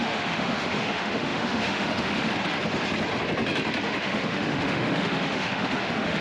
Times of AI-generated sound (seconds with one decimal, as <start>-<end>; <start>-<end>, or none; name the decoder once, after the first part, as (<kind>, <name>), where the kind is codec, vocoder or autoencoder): 0.0-2.3 (autoencoder, DAC-VAE); 4.0-6.2